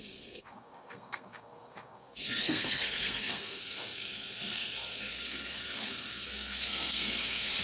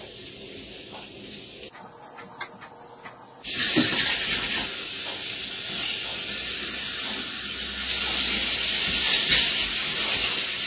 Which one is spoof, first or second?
first